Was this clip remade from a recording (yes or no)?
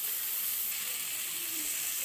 yes